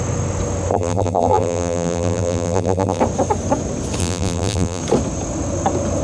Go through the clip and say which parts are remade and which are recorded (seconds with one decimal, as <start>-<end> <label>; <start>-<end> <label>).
0.0-0.7 recorded; 0.7-3.0 remade; 3.0-4.0 recorded; 4.0-4.8 remade; 4.8-6.0 recorded